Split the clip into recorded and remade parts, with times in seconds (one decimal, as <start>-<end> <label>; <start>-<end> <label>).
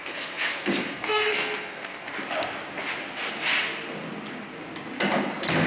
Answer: 0.0-2.1 remade; 2.1-5.7 recorded